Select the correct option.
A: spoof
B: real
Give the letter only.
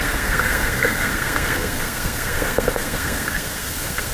A